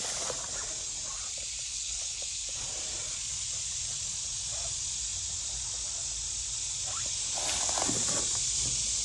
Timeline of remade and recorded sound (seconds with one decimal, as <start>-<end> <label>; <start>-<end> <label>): 0.0-1.7 recorded; 1.7-2.5 remade; 2.5-9.0 recorded